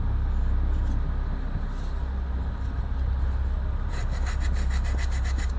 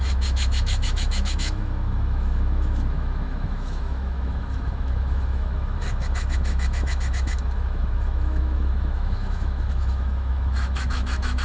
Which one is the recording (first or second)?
first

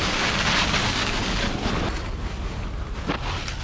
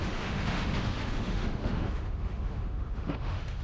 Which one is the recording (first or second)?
first